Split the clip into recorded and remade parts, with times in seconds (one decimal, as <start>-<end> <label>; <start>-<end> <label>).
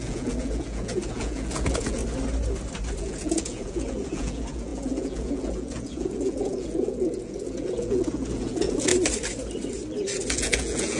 0.0-2.0 remade; 2.0-3.0 recorded; 3.0-8.9 remade; 8.9-10.3 recorded; 10.3-11.0 remade